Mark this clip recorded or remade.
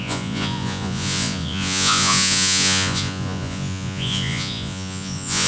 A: remade